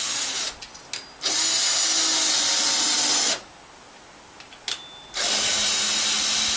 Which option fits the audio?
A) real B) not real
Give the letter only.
A